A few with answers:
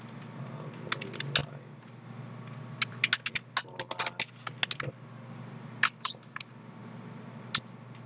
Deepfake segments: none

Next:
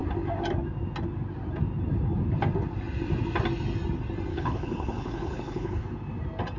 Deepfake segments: 4.3-5.8

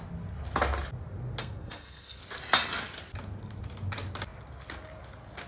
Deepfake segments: 1.4-2.2

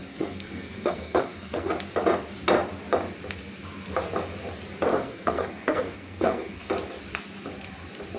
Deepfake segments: 0.0-1.7; 4.9-6.7

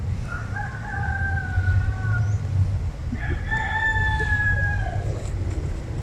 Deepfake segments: 4.4-5.1

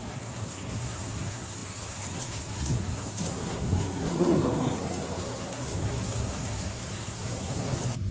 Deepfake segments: 0.0-8.1

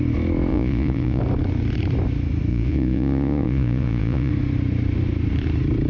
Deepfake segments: 0.5-1.2; 2.5-4.3

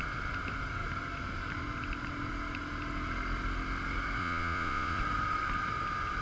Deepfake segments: 4.2-5.0